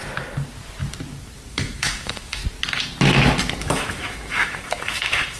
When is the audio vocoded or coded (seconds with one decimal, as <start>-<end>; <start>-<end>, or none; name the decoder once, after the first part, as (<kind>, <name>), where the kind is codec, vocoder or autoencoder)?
1.5-2.4 (autoencoder, DAC-VAE); 3.6-5.4